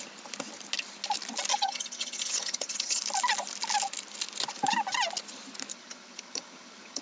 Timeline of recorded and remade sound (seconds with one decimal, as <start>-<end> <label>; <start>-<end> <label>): 0.0-1.5 recorded; 1.5-3.0 remade; 3.0-5.7 recorded; 5.7-7.0 remade

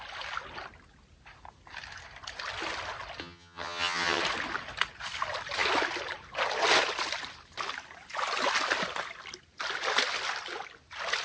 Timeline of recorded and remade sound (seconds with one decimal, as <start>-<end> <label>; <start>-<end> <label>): 0.0-3.2 recorded; 3.2-4.2 remade; 4.2-11.2 recorded

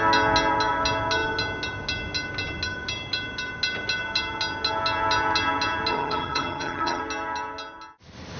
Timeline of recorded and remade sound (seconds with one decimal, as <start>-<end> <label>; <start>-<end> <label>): 0.0-5.9 recorded; 5.9-7.0 remade; 7.0-8.4 recorded

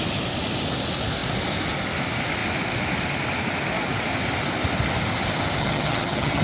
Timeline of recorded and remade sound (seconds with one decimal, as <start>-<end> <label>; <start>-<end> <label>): 0.0-5.6 recorded; 5.6-6.4 remade

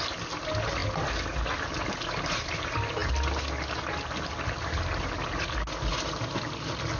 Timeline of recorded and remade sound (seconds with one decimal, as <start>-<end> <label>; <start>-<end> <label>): 0.0-7.0 recorded

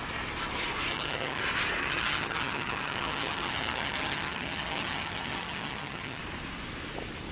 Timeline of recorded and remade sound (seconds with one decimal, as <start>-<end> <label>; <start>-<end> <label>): 0.0-0.9 recorded; 0.9-1.4 remade; 1.4-1.8 recorded; 1.8-6.2 remade; 6.2-7.3 recorded

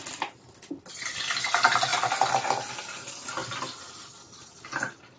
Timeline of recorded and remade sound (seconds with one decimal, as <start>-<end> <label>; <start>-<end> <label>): 0.0-5.2 recorded

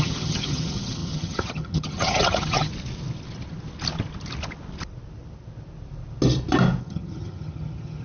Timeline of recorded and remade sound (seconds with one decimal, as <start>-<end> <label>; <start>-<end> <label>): 0.0-2.7 remade; 2.7-6.8 recorded; 6.8-8.0 remade